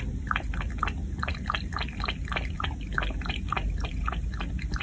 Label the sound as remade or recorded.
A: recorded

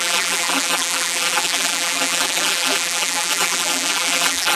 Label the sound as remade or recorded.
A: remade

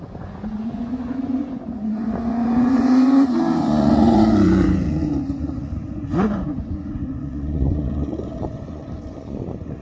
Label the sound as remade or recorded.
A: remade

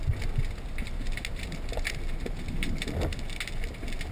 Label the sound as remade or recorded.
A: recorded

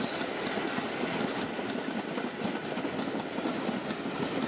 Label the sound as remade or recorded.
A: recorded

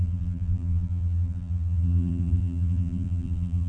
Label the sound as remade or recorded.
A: remade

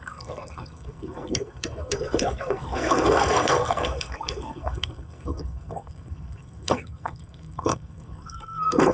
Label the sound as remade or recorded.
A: remade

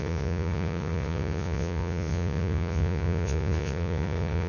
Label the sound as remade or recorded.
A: remade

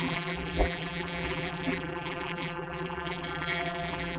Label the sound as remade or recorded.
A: remade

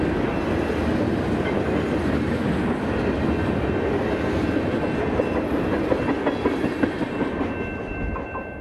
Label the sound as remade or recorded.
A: recorded